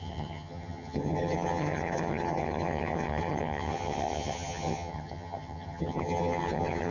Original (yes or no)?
no